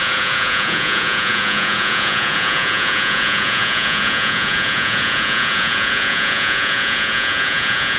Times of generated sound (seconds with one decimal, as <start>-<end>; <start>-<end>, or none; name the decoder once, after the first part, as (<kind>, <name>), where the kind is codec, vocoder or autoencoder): 0.0-8.0 (vocoder, Vocos)